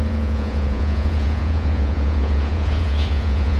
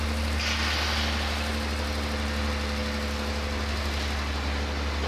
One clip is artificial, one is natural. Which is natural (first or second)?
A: second